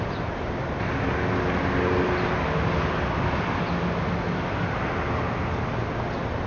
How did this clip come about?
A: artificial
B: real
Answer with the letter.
B